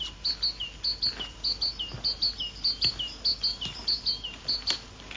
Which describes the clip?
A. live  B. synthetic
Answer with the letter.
A